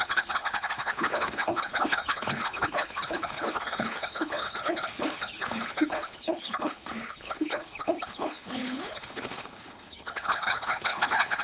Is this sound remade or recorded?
remade